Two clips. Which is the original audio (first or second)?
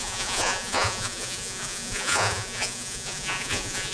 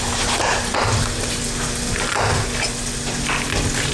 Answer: second